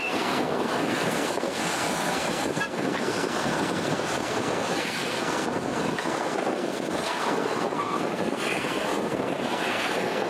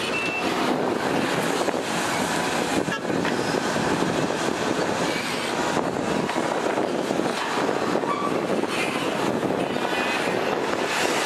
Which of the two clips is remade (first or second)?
first